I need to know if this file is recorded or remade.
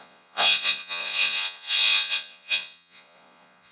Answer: remade